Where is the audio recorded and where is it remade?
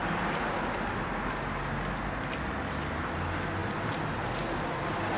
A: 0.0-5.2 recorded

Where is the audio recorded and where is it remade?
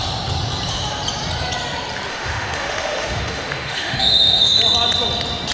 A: 0.0-2.1 recorded; 2.1-4.6 remade; 4.6-5.5 recorded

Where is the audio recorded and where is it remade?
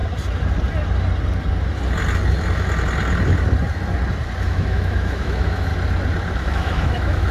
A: 0.0-4.4 recorded; 4.4-5.7 remade; 5.7-6.5 recorded; 6.5-7.3 remade